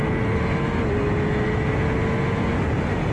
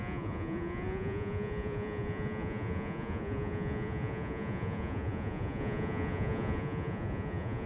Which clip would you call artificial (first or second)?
second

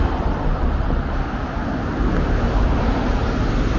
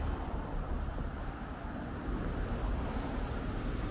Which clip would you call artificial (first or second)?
second